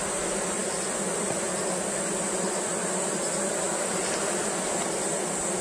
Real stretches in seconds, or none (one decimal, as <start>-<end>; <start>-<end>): 0.0-5.6